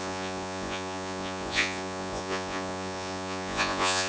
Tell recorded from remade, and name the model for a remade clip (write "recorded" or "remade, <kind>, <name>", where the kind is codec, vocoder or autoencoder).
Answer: remade, vocoder, Vocos